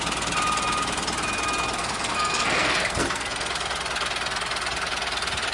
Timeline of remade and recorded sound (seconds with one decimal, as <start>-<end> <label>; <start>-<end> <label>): 0.0-1.8 recorded; 1.8-3.5 remade; 3.5-5.5 recorded